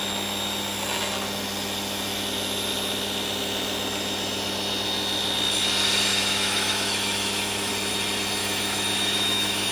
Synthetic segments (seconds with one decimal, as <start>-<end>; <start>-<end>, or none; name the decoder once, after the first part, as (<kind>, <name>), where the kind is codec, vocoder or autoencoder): 6.1-7.7 (autoencoder, DAC-VAE); 8.4-9.7